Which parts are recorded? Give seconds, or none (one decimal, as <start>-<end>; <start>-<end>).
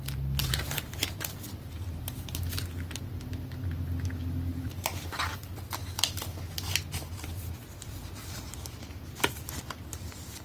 0.0-0.4; 1.0-4.5; 5.1-10.4